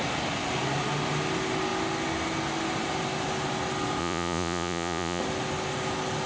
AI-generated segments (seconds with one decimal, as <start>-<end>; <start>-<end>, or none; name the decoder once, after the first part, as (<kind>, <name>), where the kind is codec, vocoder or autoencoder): 4.0-5.2 (vocoder, Vocos)